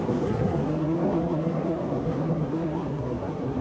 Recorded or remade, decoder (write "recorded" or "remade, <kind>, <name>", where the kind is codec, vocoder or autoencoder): remade, codec, SNAC